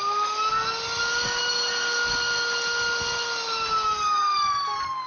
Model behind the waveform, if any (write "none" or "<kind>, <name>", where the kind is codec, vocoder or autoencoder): none